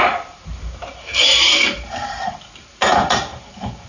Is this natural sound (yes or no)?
yes